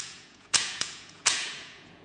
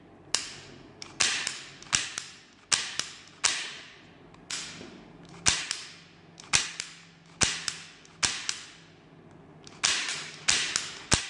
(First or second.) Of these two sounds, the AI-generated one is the first